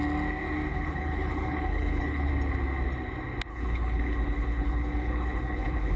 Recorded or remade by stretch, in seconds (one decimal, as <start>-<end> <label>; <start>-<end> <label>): 0.0-0.7 recorded; 0.7-2.3 remade; 2.3-3.5 recorded; 3.5-6.0 remade